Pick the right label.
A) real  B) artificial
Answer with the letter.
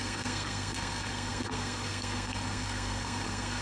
B